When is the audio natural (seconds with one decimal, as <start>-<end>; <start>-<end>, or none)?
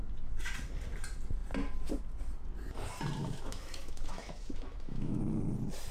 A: 0.0-3.2; 5.2-5.9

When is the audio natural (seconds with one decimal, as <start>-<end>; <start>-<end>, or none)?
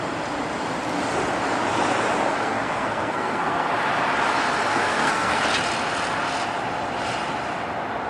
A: 0.0-2.3; 3.7-4.7; 5.4-8.1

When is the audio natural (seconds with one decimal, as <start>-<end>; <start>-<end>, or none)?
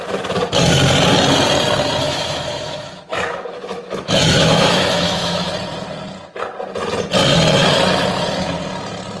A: 0.0-2.0; 5.5-9.2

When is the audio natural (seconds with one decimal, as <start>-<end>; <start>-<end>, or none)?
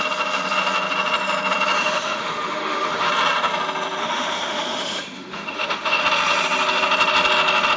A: 0.0-1.8; 3.1-4.0; 6.0-7.8